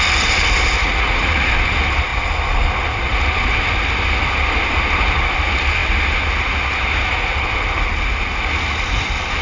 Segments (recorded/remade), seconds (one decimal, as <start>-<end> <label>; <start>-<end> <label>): 0.0-0.8 recorded; 0.8-1.5 remade; 1.5-9.4 recorded